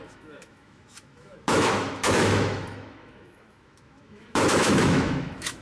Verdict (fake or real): fake